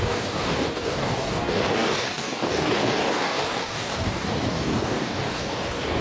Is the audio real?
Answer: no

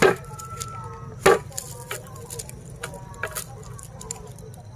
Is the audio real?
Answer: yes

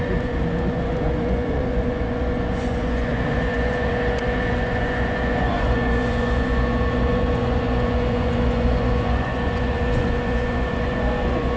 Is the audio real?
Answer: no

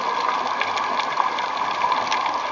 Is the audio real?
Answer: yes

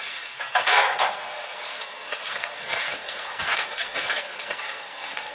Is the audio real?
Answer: no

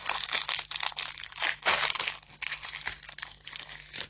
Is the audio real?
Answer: yes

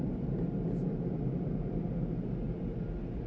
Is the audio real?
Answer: yes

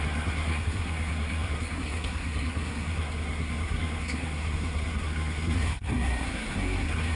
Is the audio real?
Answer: no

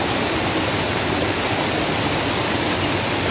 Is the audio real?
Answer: yes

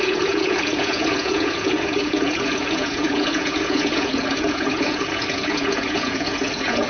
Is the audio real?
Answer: no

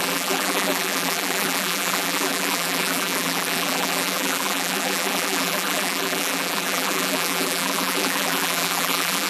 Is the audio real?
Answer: no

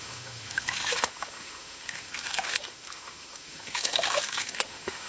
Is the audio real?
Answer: no